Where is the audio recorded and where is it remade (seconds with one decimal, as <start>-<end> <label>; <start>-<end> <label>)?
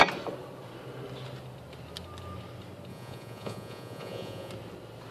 0.0-2.9 recorded; 2.9-4.5 remade; 4.5-5.1 recorded